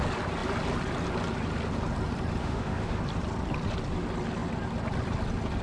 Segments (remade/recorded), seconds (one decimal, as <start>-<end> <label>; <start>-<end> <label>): 0.0-2.4 recorded; 2.4-3.0 remade; 3.0-5.6 recorded